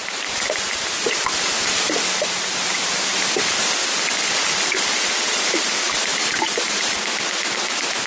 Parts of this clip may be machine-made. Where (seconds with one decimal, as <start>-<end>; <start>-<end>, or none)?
none